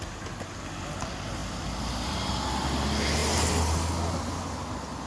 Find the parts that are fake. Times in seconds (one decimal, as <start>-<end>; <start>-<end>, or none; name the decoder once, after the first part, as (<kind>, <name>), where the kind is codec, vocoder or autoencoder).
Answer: none

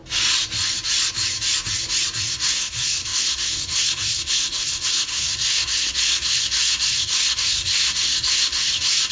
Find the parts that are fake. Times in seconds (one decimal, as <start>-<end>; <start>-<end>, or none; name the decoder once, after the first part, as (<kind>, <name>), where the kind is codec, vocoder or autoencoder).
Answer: 2.3-9.1 (codec, SNAC)